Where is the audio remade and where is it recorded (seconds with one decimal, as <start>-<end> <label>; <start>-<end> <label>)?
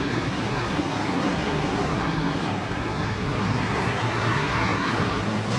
0.0-5.6 remade